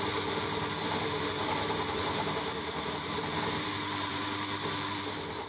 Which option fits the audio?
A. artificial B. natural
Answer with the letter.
A